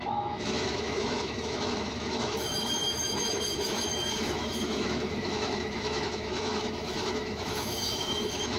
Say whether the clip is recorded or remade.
remade